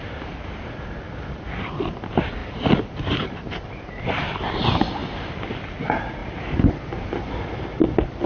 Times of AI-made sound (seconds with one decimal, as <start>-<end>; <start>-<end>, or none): 2.4-4.5; 6.2-7.8